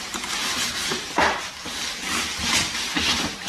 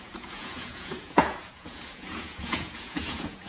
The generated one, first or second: second